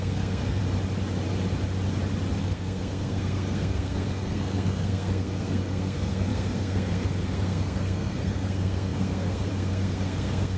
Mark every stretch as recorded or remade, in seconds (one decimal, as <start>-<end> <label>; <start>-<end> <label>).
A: 0.0-0.6 remade; 0.6-2.4 recorded; 2.4-10.6 remade